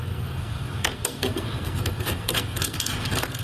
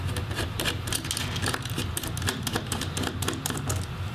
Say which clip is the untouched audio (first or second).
second